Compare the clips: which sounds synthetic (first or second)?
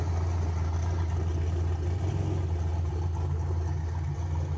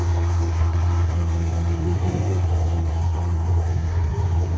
second